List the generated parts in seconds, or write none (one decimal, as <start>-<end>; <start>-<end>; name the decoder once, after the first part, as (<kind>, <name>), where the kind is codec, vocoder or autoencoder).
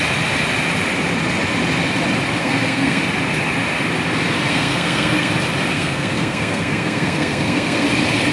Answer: 2.4-3.0 (codec, SNAC); 4.5-5.3; 5.7-7.9